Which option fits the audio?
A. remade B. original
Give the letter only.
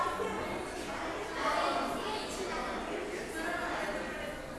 B